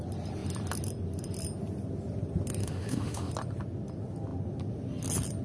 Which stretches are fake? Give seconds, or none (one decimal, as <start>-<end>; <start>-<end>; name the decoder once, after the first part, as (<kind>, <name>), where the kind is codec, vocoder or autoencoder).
2.6-3.3 (autoencoder, DAC-VAE)